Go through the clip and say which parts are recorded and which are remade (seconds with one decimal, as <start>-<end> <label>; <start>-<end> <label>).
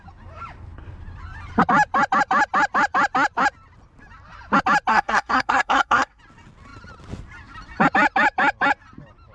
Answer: 0.0-4.9 recorded; 4.9-6.2 remade; 6.2-9.3 recorded